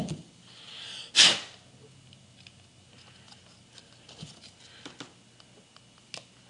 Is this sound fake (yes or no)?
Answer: no